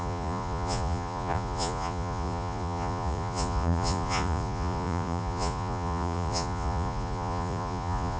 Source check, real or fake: fake